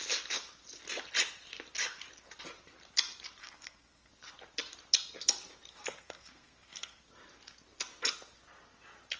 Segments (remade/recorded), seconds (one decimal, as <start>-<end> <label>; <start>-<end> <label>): 0.0-3.4 recorded; 3.4-4.1 remade; 4.1-5.7 recorded; 5.7-7.0 remade; 7.0-9.2 recorded